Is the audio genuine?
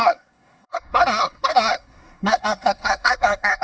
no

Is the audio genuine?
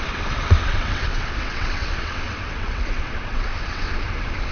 no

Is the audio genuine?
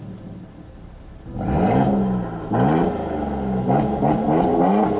yes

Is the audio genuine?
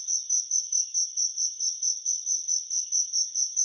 yes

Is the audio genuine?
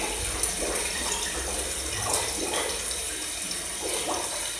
yes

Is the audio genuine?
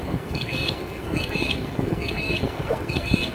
no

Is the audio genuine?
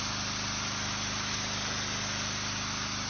yes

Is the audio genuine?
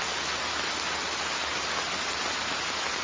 yes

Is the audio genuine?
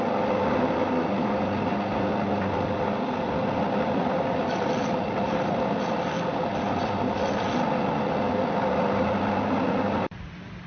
yes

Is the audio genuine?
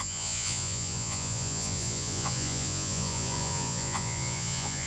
no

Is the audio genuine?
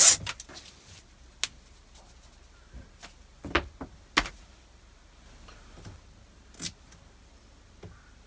yes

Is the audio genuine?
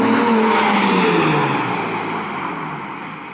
yes